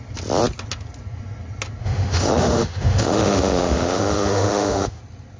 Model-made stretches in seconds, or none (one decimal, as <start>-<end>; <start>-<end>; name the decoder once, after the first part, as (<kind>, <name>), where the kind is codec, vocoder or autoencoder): 1.8-5.0 (autoencoder, DAC-VAE)